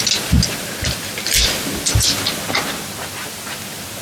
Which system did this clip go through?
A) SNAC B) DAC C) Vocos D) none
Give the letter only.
D